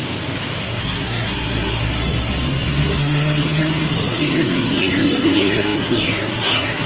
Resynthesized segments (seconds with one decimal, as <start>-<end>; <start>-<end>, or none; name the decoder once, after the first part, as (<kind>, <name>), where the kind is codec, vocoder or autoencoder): 0.6-6.9 (codec, SNAC)